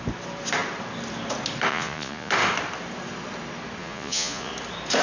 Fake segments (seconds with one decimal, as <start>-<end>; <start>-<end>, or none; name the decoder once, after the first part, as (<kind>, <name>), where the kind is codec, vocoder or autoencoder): 1.7-2.3 (vocoder, Vocos); 3.8-4.5